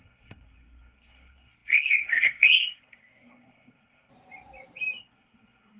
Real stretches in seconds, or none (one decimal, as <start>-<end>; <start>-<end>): 4.1-5.0